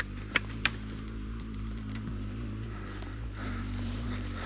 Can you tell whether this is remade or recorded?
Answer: recorded